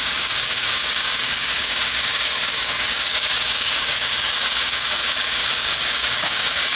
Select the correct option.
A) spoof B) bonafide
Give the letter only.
A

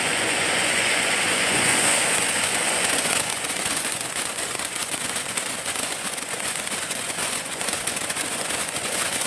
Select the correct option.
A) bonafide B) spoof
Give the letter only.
B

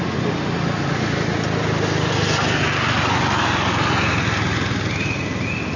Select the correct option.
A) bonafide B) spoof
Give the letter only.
A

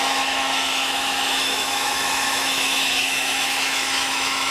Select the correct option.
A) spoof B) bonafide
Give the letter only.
A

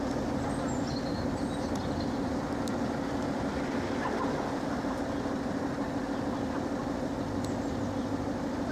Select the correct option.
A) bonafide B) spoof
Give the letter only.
A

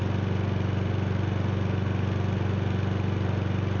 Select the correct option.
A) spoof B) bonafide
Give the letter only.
B